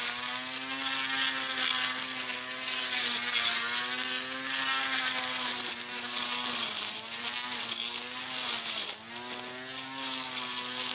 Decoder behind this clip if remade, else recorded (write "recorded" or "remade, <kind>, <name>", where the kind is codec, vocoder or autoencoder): recorded